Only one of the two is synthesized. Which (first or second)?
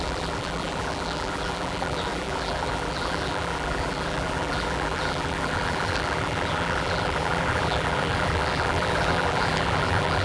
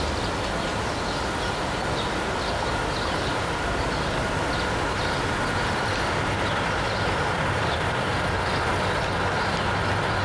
first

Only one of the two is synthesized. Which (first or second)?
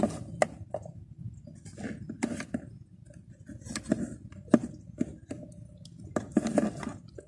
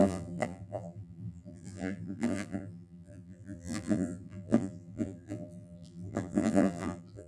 second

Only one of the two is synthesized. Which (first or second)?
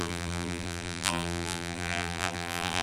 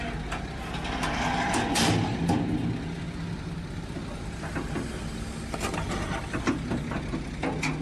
first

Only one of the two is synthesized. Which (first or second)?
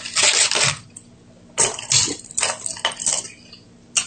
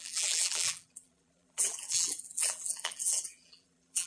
second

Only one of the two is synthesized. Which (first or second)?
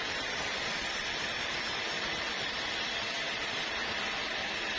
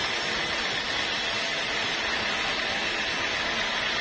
first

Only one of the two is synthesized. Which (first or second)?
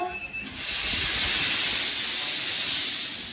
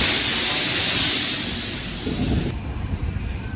second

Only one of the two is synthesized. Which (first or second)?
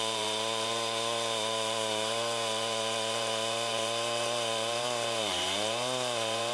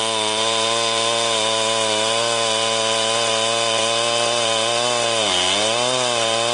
first